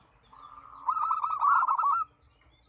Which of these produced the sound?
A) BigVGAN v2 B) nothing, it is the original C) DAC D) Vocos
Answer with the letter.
B